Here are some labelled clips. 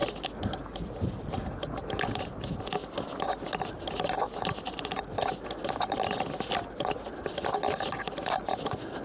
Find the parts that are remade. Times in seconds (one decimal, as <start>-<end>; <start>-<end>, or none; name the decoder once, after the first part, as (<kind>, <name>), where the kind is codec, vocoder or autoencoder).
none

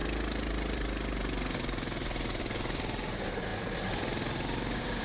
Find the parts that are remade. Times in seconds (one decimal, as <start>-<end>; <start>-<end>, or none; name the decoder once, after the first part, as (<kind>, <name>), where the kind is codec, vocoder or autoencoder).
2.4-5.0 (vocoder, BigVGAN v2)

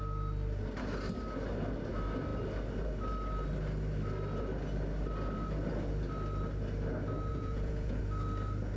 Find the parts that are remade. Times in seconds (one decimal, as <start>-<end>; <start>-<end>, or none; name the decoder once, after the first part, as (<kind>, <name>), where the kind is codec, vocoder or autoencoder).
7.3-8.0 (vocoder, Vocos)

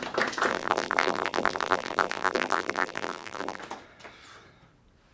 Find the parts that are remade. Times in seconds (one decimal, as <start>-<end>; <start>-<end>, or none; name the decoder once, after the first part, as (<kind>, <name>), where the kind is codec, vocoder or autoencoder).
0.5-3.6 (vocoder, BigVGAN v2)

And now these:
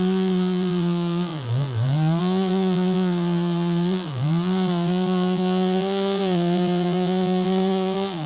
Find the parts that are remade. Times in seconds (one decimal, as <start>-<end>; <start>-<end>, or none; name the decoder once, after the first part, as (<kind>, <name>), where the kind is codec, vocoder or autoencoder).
0.0-8.3 (vocoder, BigVGAN v2)

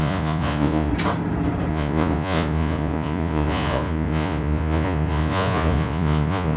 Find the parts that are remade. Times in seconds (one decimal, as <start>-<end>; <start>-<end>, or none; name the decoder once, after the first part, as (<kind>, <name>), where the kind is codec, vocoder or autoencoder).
0.0-0.9 (vocoder, Vocos); 1.7-6.6